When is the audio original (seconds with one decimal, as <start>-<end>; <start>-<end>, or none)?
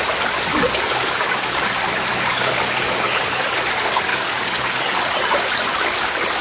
0.0-0.5; 1.7-2.1; 3.5-4.1; 5.0-6.4